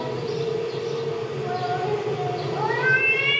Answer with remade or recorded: recorded